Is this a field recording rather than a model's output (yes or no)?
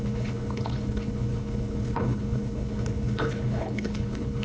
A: no